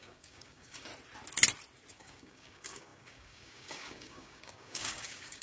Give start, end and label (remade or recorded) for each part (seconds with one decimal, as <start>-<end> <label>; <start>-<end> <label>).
0.0-0.9 remade; 0.9-1.9 recorded; 1.9-5.4 remade